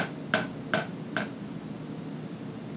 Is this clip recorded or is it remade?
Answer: recorded